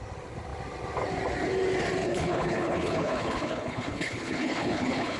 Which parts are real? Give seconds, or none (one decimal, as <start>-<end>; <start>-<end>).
0.0-2.0